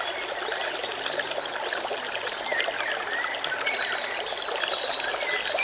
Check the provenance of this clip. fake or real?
real